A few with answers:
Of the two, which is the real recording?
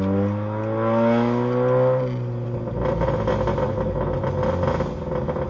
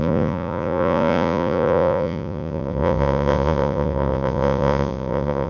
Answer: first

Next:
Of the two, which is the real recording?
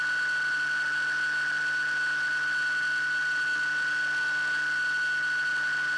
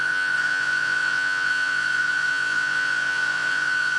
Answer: first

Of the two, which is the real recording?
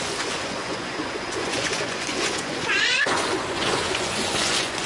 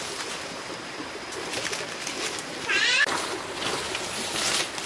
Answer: second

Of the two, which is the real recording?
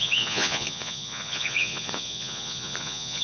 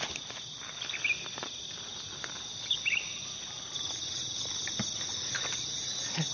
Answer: second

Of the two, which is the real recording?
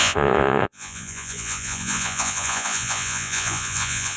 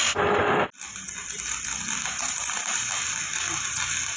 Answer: second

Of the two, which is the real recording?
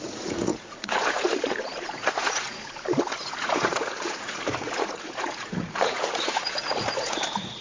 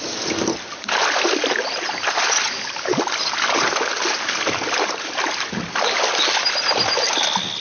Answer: second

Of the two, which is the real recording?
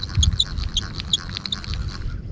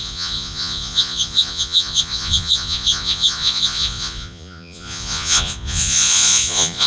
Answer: first